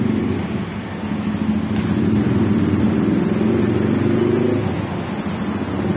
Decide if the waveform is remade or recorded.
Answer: recorded